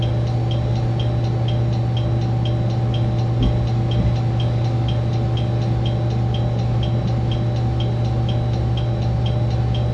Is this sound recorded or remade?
recorded